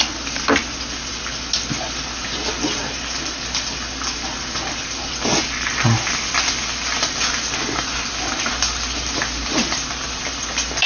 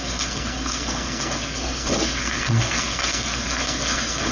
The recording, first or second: first